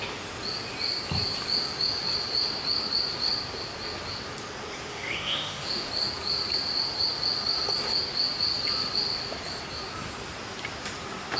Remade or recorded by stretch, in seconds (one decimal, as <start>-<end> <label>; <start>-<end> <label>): 0.0-4.9 recorded; 4.9-5.9 remade; 5.9-11.4 recorded